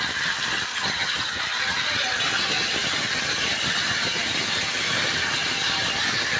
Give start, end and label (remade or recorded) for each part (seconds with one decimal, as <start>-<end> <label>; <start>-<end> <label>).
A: 0.0-0.7 recorded; 0.7-1.4 remade; 1.4-6.4 recorded

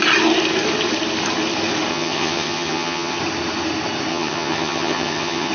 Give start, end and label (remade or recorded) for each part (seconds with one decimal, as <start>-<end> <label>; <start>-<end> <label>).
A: 0.0-1.9 recorded; 1.9-3.2 remade; 3.2-4.1 recorded; 4.1-5.5 remade

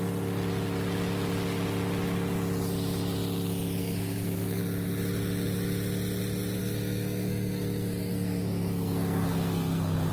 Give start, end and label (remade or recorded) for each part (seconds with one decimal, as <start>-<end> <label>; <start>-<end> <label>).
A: 0.0-3.8 recorded; 3.8-4.6 remade; 4.6-6.6 recorded; 6.6-10.1 remade